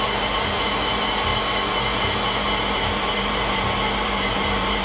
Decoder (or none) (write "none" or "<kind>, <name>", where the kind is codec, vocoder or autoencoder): vocoder, BigVGAN v2